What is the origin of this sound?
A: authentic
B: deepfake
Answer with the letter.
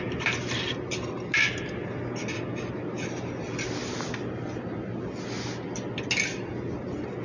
A